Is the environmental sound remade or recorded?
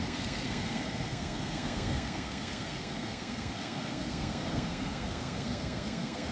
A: remade